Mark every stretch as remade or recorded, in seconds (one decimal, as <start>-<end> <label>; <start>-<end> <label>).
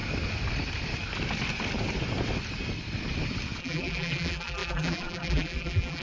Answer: 0.0-3.6 recorded; 3.6-6.0 remade